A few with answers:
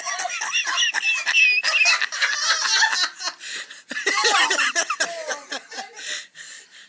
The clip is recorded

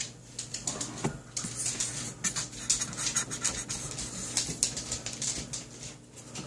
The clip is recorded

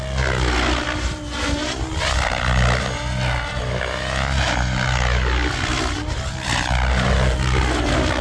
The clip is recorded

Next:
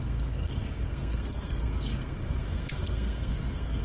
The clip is remade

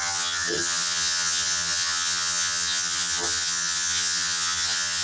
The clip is remade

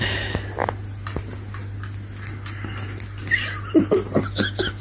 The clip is recorded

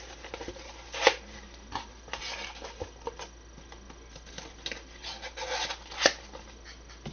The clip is recorded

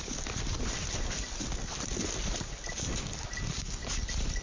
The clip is recorded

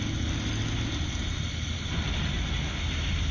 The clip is recorded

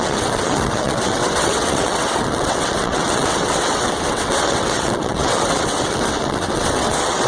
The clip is remade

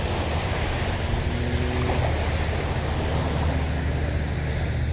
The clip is recorded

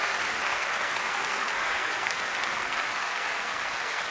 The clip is remade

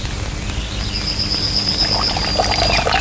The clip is recorded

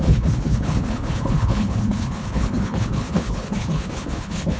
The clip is remade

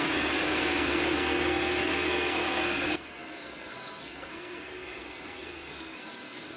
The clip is remade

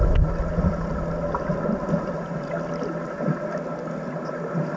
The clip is recorded